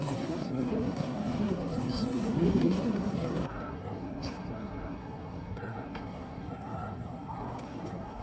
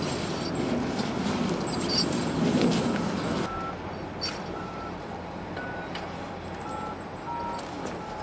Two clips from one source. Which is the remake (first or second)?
first